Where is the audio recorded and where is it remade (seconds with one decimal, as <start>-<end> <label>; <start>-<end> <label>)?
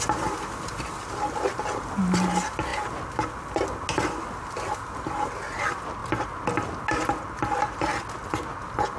0.0-9.0 recorded